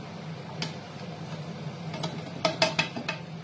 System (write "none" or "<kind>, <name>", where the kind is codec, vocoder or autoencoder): none